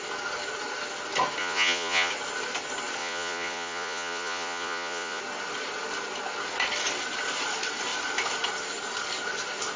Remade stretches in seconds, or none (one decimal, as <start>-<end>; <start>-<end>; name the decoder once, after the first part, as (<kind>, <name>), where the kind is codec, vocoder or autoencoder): 1.4-2.1 (vocoder, Vocos); 3.0-5.2